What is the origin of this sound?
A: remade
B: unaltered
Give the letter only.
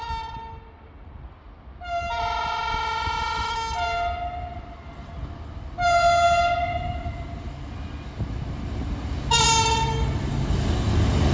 B